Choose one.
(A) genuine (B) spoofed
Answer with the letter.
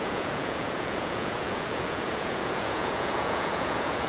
B